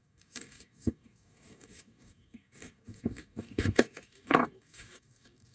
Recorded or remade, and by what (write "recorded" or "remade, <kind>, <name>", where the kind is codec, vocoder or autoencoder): remade, codec, DAC